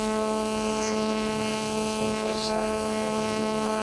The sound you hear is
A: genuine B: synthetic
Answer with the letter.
B